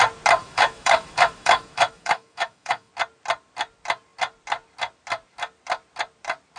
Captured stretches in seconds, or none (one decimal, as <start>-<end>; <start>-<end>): 0.0-0.4; 2.9-6.6